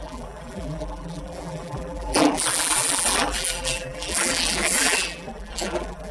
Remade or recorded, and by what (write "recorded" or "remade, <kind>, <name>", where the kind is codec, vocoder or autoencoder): remade, vocoder, BigVGAN v2